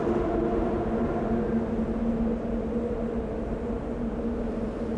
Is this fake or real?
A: real